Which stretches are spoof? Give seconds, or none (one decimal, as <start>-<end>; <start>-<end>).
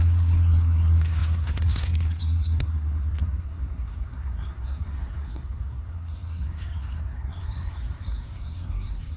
0.0-9.2